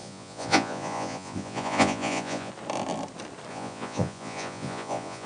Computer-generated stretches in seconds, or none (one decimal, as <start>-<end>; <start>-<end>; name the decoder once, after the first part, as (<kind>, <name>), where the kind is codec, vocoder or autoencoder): 0.0-2.5 (vocoder, Vocos); 3.5-5.3